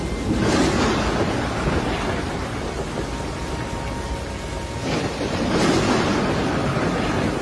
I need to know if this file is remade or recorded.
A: recorded